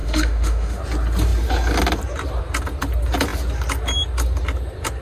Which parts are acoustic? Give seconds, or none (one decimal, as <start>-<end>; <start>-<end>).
0.8-5.0